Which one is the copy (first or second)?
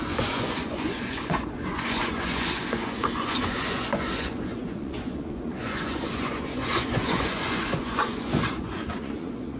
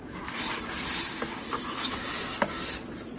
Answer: first